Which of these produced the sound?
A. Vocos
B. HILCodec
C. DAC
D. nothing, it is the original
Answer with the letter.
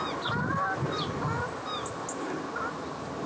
D